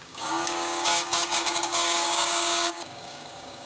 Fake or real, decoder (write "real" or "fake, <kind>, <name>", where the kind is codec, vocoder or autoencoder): fake, codec, DAC